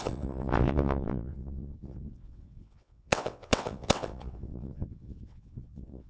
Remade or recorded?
remade